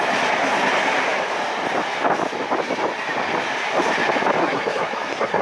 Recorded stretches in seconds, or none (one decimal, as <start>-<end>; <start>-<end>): 0.0-4.4